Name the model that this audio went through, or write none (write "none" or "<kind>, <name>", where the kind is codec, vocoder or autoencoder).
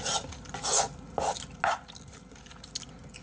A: none